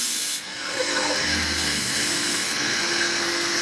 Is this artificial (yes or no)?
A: yes